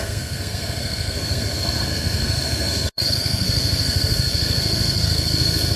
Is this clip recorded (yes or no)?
no